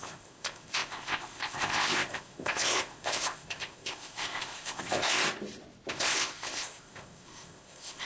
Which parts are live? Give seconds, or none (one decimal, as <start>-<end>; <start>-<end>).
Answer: 5.2-5.9